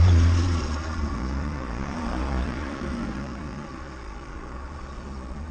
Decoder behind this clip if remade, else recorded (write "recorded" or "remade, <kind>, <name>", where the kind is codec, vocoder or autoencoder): remade, vocoder, Vocos